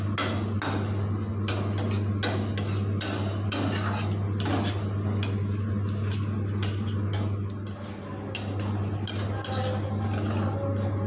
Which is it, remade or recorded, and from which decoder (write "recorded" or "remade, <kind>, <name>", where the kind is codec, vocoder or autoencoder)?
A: recorded